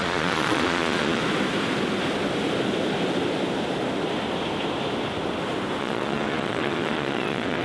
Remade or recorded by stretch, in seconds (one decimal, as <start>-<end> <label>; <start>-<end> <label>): 0.0-1.2 remade; 1.2-5.8 recorded; 5.8-7.6 remade